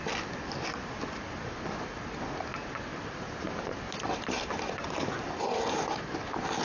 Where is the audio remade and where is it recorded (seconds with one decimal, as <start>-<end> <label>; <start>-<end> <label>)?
0.0-2.5 recorded; 2.5-6.0 remade; 6.0-6.6 recorded